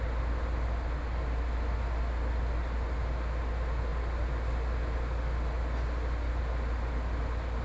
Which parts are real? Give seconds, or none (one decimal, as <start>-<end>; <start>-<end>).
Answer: 0.0-7.6